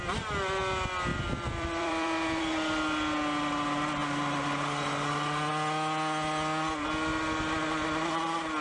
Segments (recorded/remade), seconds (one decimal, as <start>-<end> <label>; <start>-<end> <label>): 0.0-1.1 recorded; 1.1-2.4 remade; 2.4-8.6 recorded